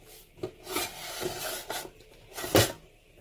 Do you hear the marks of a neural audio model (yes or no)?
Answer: no